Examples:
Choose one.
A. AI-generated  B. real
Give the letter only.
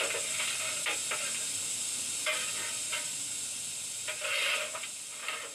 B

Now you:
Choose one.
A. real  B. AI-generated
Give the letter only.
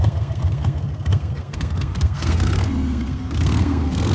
B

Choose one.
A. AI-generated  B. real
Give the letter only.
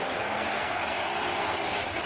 A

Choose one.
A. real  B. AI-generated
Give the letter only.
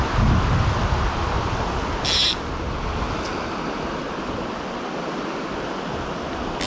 A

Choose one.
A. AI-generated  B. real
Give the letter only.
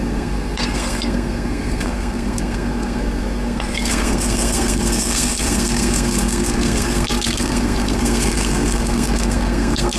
A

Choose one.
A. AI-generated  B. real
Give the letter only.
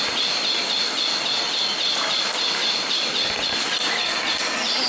B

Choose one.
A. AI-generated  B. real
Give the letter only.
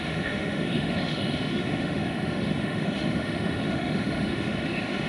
A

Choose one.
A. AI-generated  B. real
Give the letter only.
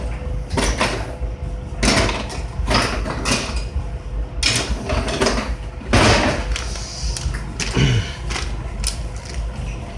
B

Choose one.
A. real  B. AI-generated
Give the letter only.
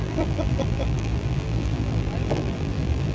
B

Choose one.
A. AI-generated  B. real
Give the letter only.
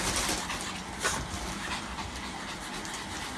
B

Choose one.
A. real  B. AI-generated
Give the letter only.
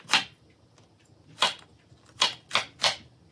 A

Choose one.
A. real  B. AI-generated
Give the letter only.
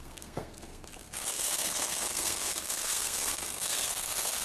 B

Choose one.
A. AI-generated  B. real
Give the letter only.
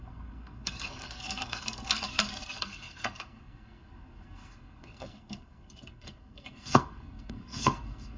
A